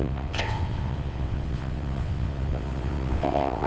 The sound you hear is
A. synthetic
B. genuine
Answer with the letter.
A